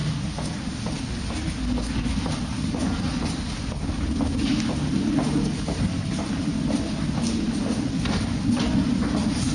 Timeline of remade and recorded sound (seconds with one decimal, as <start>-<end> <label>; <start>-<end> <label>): 0.0-9.5 recorded